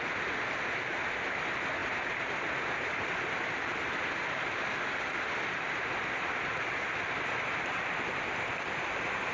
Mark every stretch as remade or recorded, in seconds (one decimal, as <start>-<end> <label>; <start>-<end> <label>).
0.0-9.3 recorded